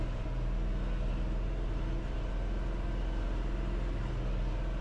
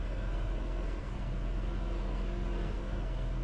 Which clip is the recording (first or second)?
first